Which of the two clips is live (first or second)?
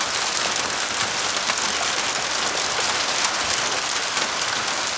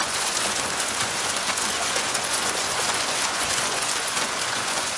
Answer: first